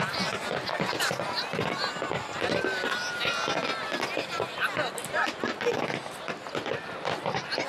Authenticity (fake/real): real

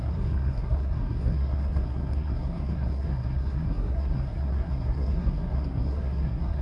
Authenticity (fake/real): fake